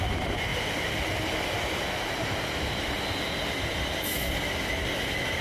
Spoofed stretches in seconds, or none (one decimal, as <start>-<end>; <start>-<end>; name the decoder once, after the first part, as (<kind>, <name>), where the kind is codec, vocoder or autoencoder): none